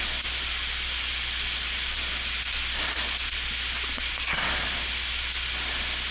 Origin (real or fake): real